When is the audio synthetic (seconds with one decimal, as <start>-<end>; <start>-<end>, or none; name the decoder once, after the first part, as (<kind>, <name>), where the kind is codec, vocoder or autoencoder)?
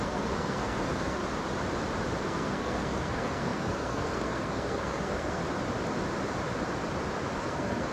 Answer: 0.0-1.2 (codec, SNAC); 2.2-5.4; 7.4-7.9